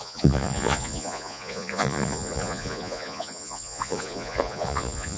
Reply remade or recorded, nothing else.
remade